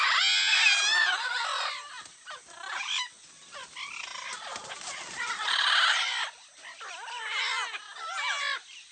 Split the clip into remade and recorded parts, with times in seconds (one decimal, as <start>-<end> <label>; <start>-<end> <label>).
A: 0.0-8.9 recorded